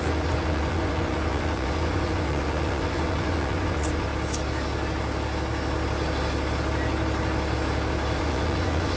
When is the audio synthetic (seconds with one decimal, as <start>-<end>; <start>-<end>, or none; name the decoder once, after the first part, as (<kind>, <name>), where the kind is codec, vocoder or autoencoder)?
0.0-4.1 (vocoder, Vocos); 8.2-9.0